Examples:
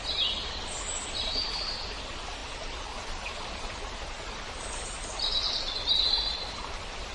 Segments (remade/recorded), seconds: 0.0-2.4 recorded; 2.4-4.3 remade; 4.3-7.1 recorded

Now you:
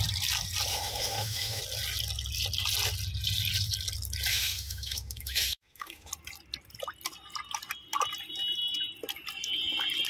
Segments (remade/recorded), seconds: 0.0-0.7 recorded; 0.7-1.6 remade; 1.6-4.3 recorded; 4.3-6.1 remade; 6.1-10.1 recorded

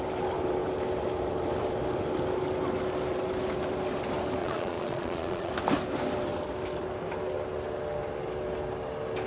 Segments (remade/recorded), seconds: 0.0-4.4 recorded; 4.4-5.5 remade; 5.5-9.3 recorded

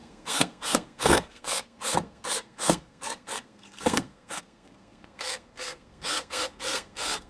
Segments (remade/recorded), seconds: 0.0-7.3 remade

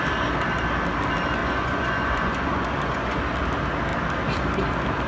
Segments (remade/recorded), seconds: 0.0-1.4 recorded; 1.4-3.2 remade; 3.2-5.1 recorded

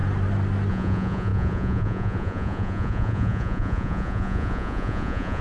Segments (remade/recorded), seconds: 0.0-0.7 recorded; 0.7-5.4 remade